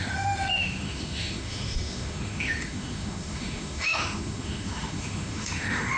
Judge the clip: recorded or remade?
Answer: remade